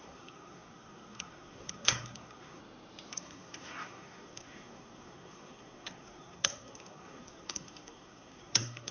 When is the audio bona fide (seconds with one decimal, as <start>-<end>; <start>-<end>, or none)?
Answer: 2.6-3.1